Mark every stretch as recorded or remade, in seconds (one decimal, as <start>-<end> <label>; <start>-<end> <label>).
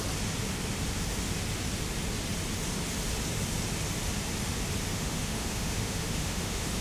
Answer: 0.0-4.9 recorded; 4.9-6.8 remade